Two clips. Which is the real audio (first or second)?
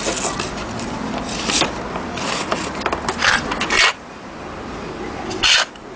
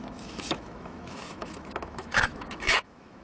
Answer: first